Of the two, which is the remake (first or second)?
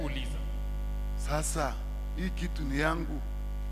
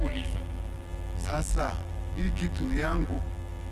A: second